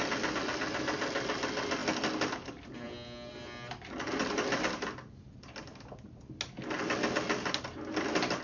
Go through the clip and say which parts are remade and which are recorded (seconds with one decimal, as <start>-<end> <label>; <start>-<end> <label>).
0.0-8.4 recorded